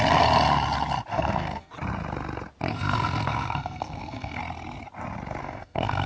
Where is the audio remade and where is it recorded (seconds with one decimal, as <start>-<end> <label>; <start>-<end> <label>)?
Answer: 0.0-1.1 recorded; 1.1-1.7 remade; 1.7-2.7 recorded; 2.7-4.4 remade; 4.4-5.4 recorded; 5.4-6.1 remade